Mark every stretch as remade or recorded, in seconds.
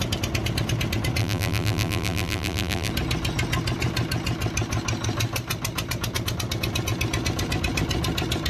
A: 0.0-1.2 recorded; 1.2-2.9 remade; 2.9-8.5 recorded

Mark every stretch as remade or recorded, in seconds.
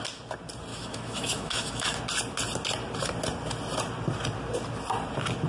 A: 0.0-0.7 recorded; 0.7-2.0 remade; 2.0-5.5 recorded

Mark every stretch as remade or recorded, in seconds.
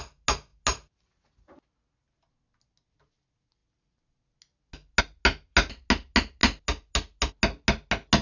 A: 0.0-8.2 recorded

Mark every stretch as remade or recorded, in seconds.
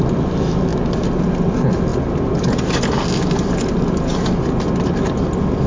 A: 0.0-5.7 recorded